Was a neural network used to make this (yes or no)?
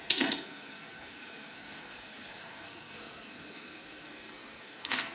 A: yes